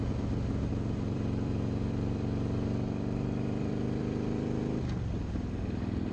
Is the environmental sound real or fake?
fake